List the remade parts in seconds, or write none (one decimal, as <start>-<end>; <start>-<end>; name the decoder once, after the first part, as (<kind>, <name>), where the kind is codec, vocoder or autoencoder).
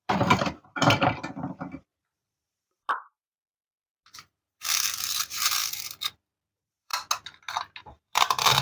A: 0.0-5.6 (vocoder, BigVGAN v2); 6.5-6.9; 7.8-8.6